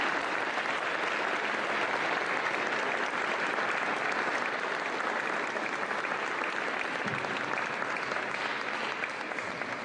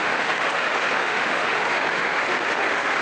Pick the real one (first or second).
first